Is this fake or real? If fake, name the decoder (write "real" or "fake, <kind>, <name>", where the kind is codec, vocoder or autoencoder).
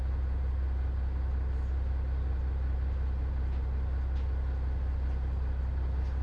real